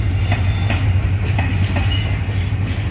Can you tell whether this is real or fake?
real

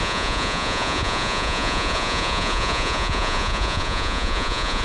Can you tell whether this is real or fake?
fake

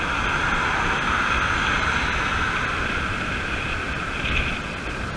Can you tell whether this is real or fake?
real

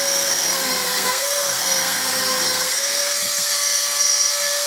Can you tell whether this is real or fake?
fake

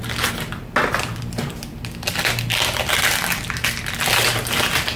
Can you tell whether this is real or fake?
real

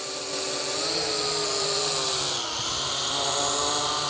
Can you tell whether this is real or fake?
real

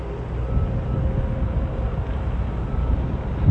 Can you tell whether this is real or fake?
real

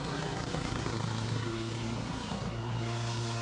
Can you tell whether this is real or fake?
fake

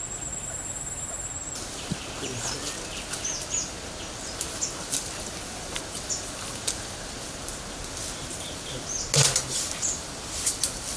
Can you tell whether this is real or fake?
real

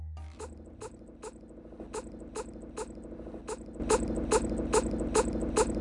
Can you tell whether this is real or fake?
real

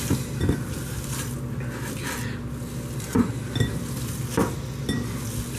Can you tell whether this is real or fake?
real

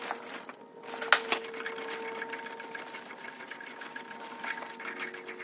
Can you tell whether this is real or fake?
real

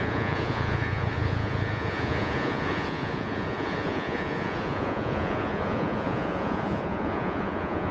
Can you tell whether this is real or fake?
fake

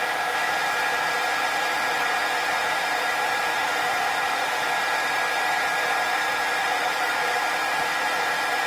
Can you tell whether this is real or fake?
real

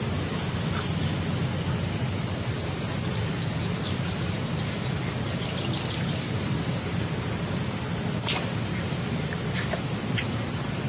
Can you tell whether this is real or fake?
real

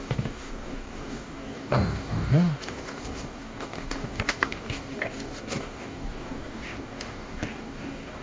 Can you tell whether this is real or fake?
fake